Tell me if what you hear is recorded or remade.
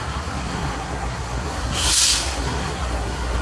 remade